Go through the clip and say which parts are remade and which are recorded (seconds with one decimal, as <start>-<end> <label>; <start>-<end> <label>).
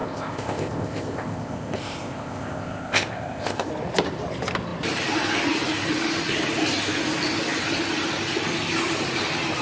0.0-3.7 remade; 3.7-9.6 recorded